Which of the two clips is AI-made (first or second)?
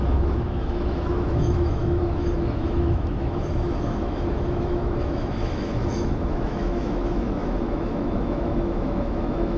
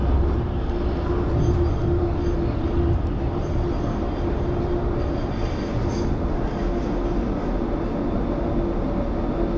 first